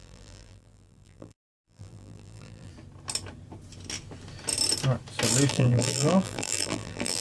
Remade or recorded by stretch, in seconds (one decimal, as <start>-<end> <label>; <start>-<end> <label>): 0.0-2.7 remade; 2.7-5.5 recorded; 5.5-7.2 remade